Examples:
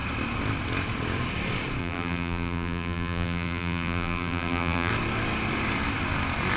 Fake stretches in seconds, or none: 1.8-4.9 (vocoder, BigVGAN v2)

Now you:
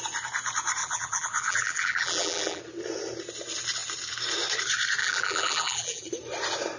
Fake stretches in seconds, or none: 0.8-2.6 (vocoder, BigVGAN v2); 5.0-6.0

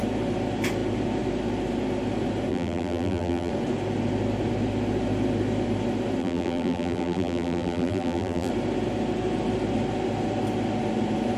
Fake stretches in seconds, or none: 2.5-3.5 (vocoder, BigVGAN v2); 6.2-8.5

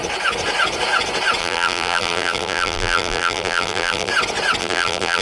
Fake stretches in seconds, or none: 1.4-4.1 (vocoder, BigVGAN v2); 4.6-5.2

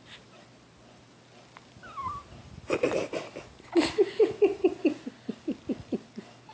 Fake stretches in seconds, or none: none